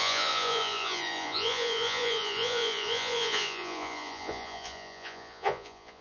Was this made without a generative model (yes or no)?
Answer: no